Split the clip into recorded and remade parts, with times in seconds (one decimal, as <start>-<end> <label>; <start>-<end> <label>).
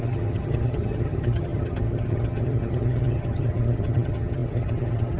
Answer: 0.0-5.2 remade